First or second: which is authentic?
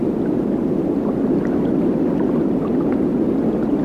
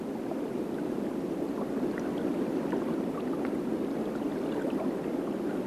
first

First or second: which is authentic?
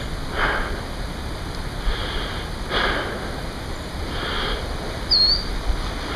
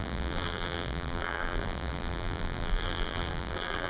first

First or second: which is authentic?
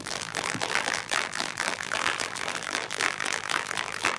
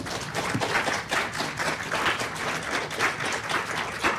second